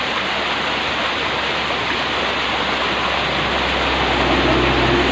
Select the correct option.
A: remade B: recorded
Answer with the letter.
B